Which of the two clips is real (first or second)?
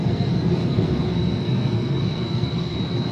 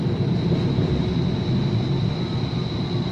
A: second